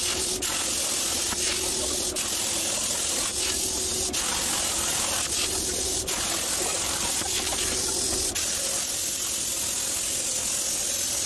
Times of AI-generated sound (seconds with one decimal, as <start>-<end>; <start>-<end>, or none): 6.7-7.9